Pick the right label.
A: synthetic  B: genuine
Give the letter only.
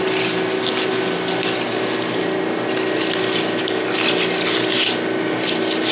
B